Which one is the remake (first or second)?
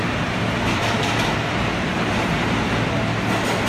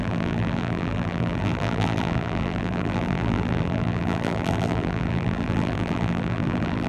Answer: second